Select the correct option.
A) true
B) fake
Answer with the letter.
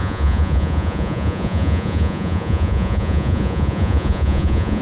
B